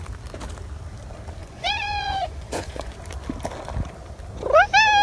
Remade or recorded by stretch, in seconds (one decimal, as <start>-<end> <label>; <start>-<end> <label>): 0.0-1.4 recorded; 1.4-2.9 remade; 2.9-5.0 recorded